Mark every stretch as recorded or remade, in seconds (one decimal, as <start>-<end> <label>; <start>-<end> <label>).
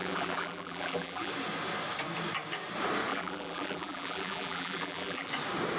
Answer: 0.0-1.3 remade; 1.3-3.1 recorded; 3.1-5.3 remade; 5.3-5.8 recorded